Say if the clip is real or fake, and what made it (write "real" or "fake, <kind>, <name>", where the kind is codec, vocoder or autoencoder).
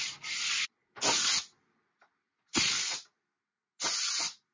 real